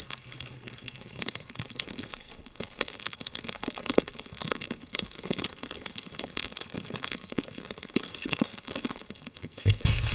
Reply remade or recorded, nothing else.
remade